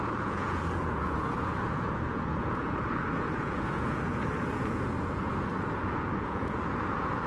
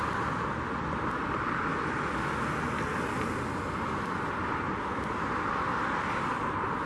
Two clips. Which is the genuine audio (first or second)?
second